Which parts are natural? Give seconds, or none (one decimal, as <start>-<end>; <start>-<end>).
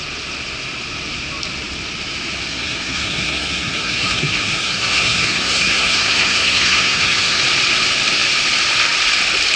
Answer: 0.0-2.5; 7.4-9.6